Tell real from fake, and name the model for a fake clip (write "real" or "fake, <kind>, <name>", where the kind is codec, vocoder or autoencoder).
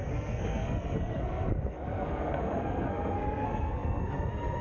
fake, codec, SNAC